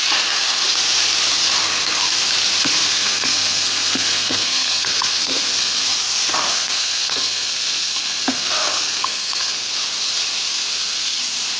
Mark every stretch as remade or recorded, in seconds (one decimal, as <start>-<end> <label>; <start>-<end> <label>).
0.0-2.9 recorded; 2.9-5.8 remade; 5.8-6.5 recorded; 6.5-9.7 remade; 9.7-10.7 recorded; 10.7-11.2 remade; 11.2-11.6 recorded